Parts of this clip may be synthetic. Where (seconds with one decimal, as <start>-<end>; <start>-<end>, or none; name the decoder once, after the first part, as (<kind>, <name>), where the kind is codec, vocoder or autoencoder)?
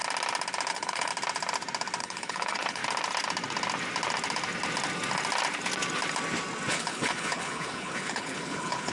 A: 0.7-1.1 (codec, HILCodec); 2.0-2.8; 6.7-8.9